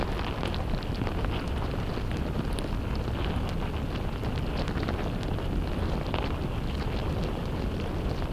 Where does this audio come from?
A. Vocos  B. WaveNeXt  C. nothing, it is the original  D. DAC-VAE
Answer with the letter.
C